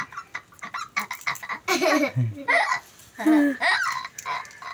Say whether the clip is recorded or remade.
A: recorded